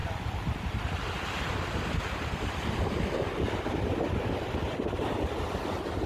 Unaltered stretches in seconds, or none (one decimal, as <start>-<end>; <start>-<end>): 0.0-6.1